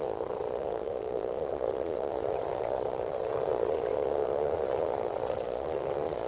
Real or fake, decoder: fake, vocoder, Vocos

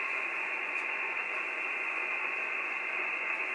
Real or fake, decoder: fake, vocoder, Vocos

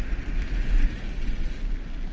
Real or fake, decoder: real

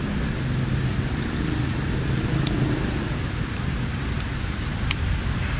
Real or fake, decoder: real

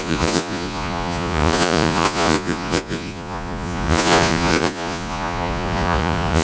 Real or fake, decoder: fake, vocoder, Vocos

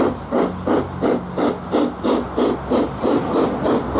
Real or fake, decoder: real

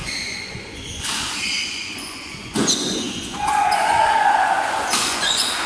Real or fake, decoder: fake, vocoder, Vocos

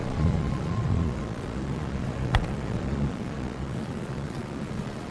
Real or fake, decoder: fake, vocoder, Vocos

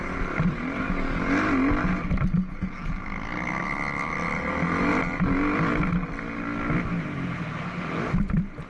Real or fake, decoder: real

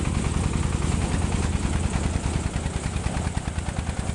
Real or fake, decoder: real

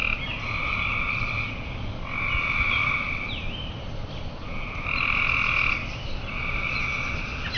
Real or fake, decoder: real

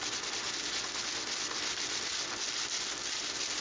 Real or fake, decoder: real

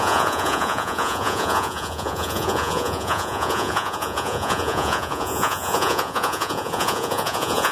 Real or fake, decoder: fake, vocoder, Vocos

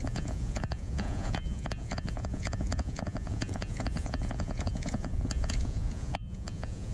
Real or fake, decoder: fake, vocoder, Vocos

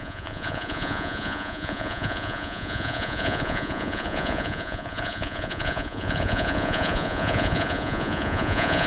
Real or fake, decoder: fake, vocoder, Vocos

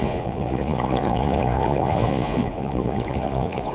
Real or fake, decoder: fake, vocoder, Vocos